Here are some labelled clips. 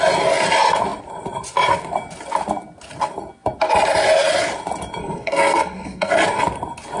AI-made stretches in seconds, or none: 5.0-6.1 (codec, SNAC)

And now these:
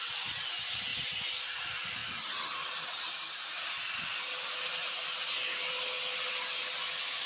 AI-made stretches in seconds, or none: none

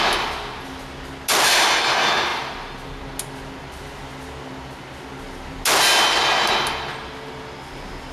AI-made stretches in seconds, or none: none

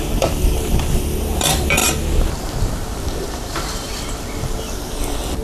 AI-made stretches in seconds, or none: 0.0-1.8 (vocoder, BigVGAN v2); 5.0-5.4

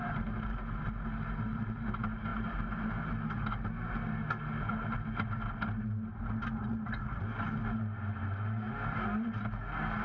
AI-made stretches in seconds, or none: none

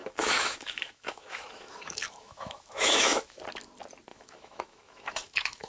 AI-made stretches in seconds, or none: 0.0-3.4 (autoencoder, DAC-VAE); 4.1-5.7

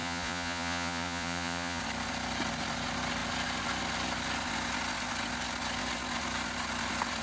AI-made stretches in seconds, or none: 0.0-1.8 (vocoder, Vocos)